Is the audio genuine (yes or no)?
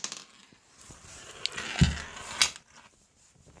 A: yes